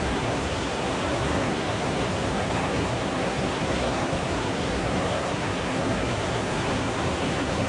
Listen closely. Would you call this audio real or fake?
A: fake